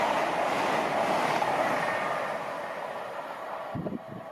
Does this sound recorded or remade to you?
recorded